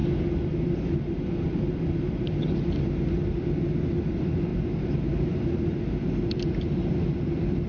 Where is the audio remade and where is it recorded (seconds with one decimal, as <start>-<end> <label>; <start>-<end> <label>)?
0.0-7.7 recorded